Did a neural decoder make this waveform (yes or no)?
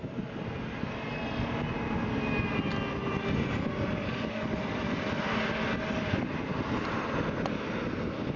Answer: no